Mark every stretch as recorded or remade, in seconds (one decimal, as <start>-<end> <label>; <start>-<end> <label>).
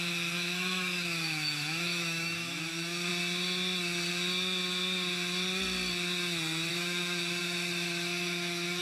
0.0-3.1 remade; 3.1-6.7 recorded; 6.7-8.8 remade